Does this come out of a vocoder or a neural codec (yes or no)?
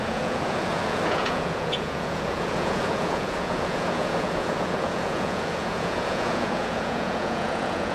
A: yes